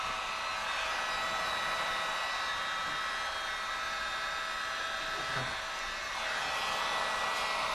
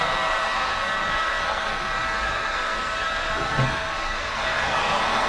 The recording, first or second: first